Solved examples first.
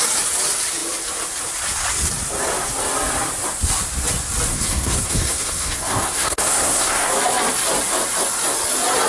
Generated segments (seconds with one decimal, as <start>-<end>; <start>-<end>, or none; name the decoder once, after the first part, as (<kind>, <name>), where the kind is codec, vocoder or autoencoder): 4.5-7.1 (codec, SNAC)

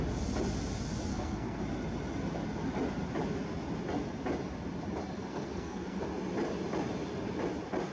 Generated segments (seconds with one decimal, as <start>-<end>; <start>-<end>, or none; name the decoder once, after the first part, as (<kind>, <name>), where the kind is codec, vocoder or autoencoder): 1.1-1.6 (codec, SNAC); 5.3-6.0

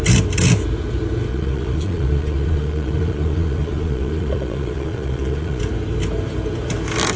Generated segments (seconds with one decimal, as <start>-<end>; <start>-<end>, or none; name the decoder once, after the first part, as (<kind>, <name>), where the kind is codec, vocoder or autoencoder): 1.3-5.6 (vocoder, Vocos)